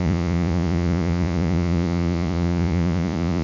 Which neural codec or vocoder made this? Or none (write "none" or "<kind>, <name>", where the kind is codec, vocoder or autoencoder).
vocoder, Vocos